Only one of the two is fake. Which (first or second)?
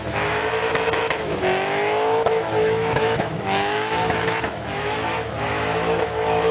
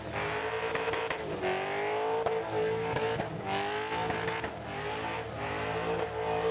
first